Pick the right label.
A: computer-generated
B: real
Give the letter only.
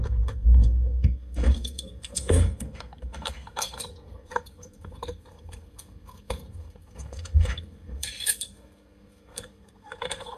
A